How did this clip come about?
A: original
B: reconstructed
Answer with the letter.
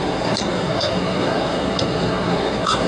B